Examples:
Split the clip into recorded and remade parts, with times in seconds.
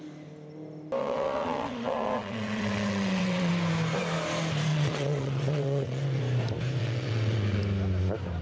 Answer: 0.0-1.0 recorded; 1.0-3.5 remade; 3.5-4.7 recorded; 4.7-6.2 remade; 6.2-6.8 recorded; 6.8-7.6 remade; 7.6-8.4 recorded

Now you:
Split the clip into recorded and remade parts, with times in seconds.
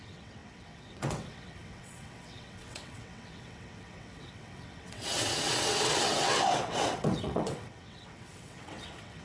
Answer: 0.0-9.2 remade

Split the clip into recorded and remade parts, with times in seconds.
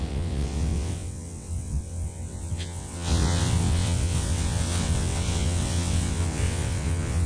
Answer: 0.0-7.3 remade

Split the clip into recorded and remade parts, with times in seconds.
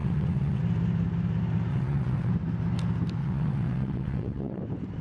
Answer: 0.0-0.6 remade; 0.6-1.7 recorded; 1.7-2.3 remade; 2.3-3.2 recorded; 3.2-4.6 remade; 4.6-5.0 recorded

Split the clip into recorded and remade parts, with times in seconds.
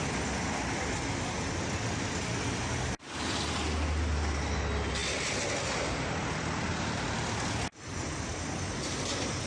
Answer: 0.0-9.5 recorded